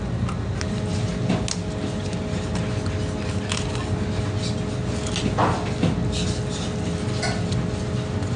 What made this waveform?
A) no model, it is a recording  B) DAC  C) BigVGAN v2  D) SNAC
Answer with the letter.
A